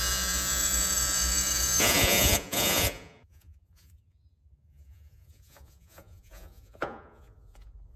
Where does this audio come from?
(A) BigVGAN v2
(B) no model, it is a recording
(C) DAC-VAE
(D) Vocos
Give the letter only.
D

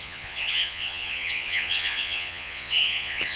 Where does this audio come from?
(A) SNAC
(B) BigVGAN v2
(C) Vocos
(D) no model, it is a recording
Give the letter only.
C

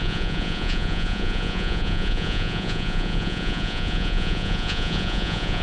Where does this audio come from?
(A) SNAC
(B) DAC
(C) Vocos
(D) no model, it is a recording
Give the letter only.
C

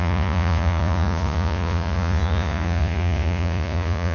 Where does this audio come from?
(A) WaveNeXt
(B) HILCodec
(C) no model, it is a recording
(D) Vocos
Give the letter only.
D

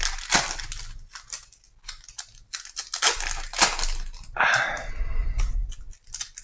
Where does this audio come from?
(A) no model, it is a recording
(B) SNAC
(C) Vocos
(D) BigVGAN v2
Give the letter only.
A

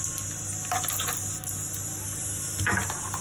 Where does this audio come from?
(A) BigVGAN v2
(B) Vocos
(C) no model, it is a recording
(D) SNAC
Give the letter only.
C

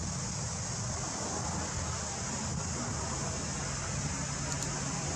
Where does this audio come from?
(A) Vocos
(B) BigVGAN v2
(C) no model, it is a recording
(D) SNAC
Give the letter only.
C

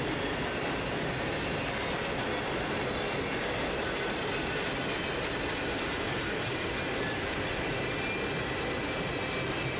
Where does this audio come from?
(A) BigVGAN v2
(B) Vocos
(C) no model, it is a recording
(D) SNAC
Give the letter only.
C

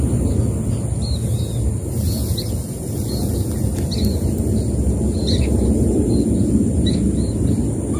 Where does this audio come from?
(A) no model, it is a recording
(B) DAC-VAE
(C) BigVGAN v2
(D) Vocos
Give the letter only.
A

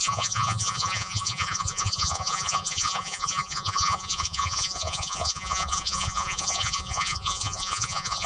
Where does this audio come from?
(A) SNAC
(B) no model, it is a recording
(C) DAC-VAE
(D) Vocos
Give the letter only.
D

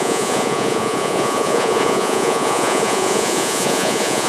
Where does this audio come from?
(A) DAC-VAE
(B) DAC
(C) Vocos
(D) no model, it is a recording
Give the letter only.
C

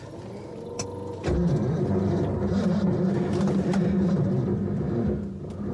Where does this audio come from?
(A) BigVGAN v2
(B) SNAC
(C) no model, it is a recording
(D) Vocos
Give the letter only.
C